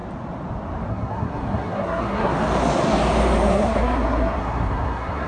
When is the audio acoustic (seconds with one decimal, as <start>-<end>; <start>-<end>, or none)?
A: 0.0-0.9; 2.3-3.5